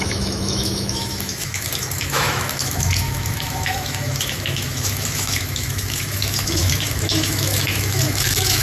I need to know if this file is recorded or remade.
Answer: remade